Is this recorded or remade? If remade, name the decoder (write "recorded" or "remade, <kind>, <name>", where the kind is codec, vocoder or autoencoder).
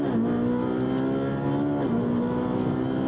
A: recorded